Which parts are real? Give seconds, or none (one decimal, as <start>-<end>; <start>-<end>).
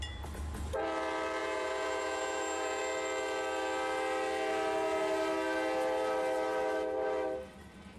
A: 0.0-1.4; 2.8-8.0